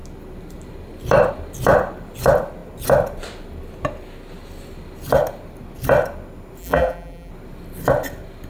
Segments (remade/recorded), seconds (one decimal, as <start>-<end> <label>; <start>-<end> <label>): 0.0-6.6 recorded; 6.6-7.3 remade; 7.3-8.5 recorded